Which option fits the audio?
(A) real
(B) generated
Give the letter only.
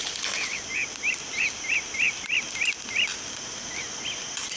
A